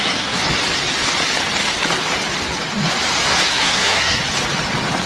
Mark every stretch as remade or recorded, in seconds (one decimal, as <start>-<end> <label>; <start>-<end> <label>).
0.0-0.4 remade; 0.4-3.5 recorded; 3.5-4.2 remade; 4.2-5.1 recorded